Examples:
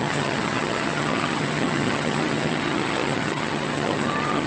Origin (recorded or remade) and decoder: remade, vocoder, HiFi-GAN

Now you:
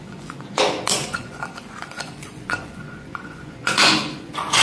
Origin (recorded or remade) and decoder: remade, vocoder, Vocos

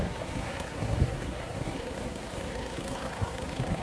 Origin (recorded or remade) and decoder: remade, codec, SNAC